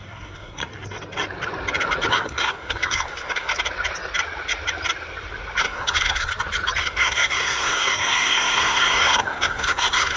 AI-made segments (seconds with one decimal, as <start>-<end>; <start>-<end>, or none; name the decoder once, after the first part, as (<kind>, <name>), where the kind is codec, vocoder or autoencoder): 0.0-0.6 (codec, SNAC); 2.1-3.5; 5.6-6.3; 6.8-10.2